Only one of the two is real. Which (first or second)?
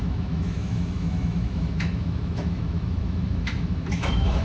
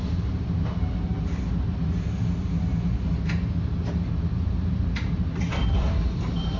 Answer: second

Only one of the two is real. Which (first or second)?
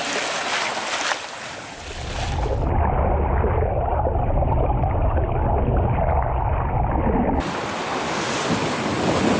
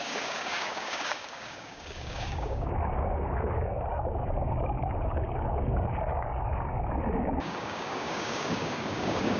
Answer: first